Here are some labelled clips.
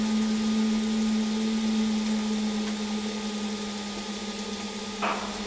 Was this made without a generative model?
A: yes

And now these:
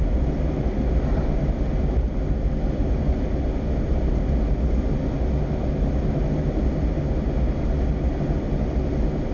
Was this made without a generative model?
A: yes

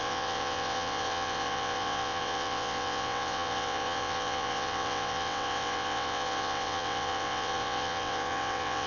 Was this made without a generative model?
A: no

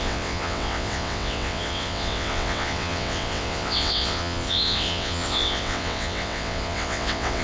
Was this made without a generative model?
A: no